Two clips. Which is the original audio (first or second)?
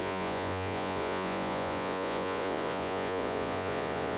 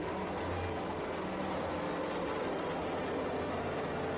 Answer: second